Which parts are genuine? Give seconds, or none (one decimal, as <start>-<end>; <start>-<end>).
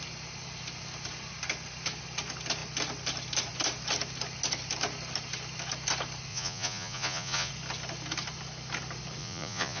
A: 0.0-6.3; 7.5-9.2